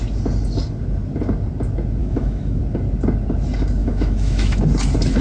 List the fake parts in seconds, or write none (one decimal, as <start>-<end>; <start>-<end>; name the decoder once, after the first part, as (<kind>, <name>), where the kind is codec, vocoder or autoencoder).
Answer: 2.0-2.6 (autoencoder, DAC-VAE); 3.8-4.6